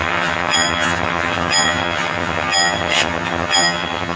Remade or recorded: remade